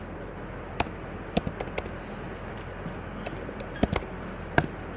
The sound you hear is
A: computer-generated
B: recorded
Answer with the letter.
B